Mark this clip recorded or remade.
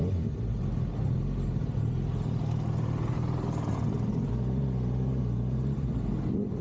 recorded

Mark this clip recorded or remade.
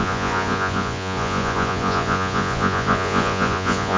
remade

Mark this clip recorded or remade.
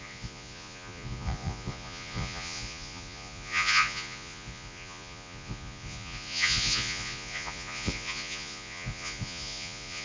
remade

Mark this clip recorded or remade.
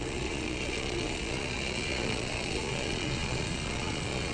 remade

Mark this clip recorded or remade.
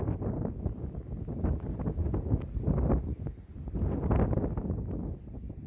recorded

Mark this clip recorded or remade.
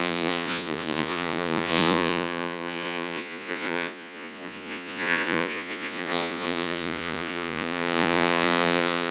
remade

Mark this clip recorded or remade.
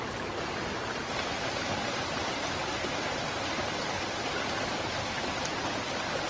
recorded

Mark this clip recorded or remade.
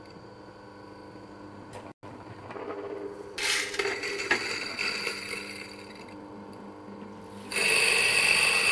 recorded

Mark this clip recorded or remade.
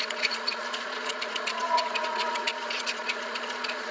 remade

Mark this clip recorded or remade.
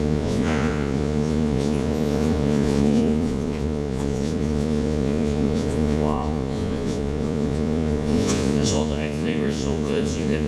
remade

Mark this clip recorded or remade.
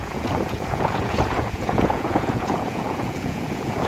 remade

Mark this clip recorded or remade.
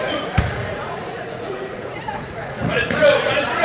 remade